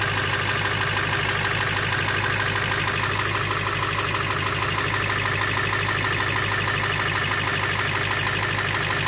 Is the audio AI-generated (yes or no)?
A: no